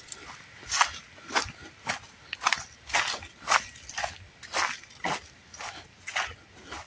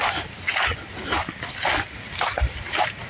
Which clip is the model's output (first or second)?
second